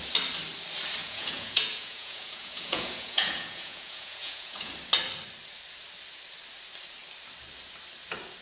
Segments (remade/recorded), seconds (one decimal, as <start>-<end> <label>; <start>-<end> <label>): 0.0-1.0 recorded; 1.0-4.7 remade; 4.7-8.4 recorded

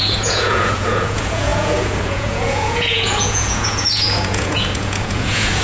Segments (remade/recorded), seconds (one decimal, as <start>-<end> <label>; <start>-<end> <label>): 0.0-5.6 remade

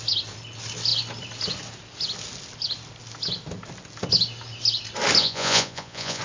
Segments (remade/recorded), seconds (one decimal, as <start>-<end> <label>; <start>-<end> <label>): 0.0-5.2 recorded; 5.2-6.2 remade